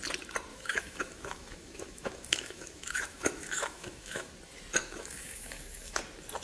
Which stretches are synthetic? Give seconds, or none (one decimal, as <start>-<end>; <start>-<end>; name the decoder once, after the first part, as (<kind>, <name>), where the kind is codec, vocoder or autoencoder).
0.5-4.3 (autoencoder, DAC-VAE); 4.8-6.0